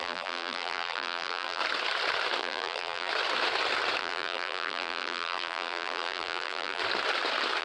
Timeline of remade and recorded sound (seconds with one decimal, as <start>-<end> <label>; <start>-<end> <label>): 0.0-1.6 remade; 1.6-2.4 recorded; 2.4-3.1 remade; 3.1-4.0 recorded; 4.0-6.8 remade; 6.8-7.6 recorded